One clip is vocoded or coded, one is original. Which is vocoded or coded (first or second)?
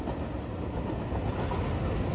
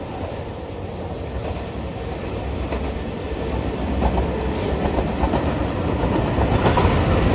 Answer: second